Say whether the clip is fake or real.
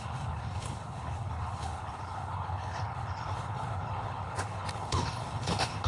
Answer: fake